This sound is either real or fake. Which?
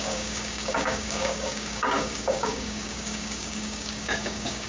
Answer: fake